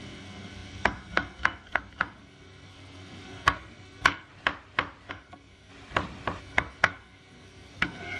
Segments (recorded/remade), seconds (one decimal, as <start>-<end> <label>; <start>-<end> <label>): 0.0-4.3 remade; 4.3-5.1 recorded; 5.1-5.7 remade; 5.7-6.4 recorded; 6.4-8.2 remade